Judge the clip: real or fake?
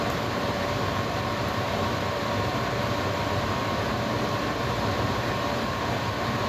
fake